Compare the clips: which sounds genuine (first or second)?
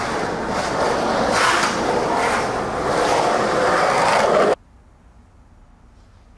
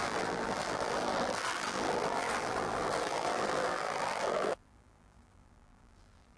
first